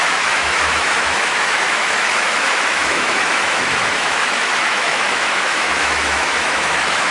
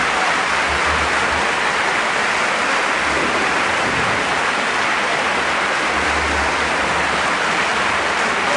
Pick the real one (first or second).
second